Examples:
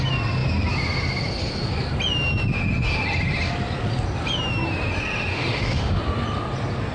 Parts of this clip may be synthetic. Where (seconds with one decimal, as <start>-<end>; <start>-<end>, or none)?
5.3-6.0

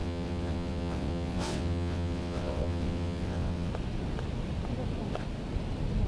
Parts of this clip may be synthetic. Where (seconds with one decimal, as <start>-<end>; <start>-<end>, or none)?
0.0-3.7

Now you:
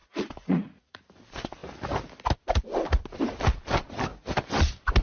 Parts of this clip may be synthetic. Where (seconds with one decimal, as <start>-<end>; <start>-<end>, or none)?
0.0-1.0

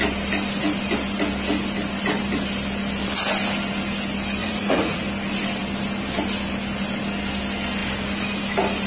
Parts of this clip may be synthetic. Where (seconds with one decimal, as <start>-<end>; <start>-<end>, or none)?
4.4-5.0